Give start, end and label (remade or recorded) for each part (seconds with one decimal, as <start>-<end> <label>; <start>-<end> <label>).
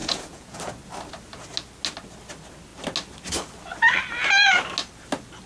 0.0-0.6 remade; 0.6-5.5 recorded